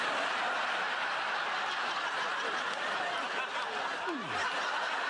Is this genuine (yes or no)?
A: yes